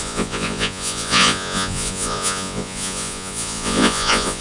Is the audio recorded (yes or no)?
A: no